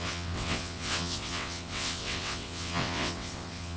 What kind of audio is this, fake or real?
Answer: fake